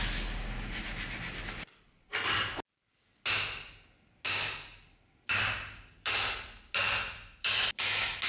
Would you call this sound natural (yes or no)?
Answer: yes